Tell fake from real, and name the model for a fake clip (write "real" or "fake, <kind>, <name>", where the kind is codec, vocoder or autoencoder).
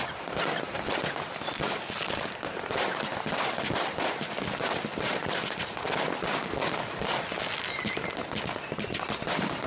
real